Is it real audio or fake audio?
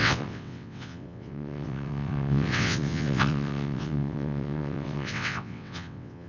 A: fake